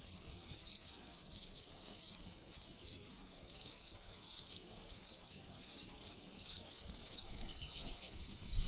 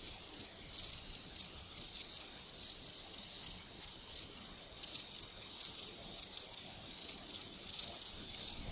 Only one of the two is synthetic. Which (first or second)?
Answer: first